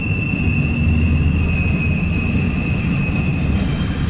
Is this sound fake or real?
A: real